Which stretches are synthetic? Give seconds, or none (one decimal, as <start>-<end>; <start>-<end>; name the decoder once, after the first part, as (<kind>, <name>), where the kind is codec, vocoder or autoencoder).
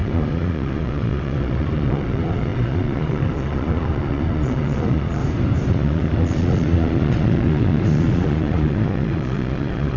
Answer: 0.0-5.2 (vocoder, Vocos); 5.7-10.0